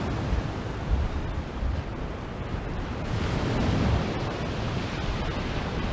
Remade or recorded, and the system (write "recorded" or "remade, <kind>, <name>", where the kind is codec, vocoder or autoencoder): recorded